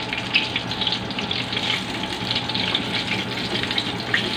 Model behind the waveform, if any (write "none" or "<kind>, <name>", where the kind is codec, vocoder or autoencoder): none